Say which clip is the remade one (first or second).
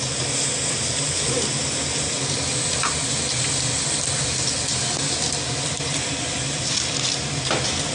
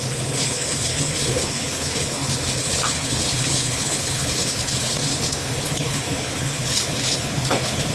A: second